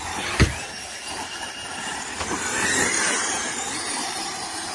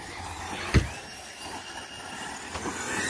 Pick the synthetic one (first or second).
first